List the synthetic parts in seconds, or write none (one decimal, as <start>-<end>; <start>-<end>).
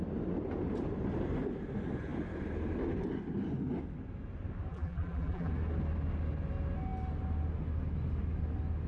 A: 4.7-5.5